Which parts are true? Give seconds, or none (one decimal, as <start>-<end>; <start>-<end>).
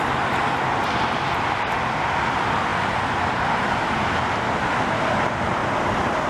0.0-5.6